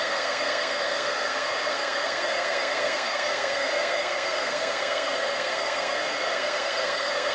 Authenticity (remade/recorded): remade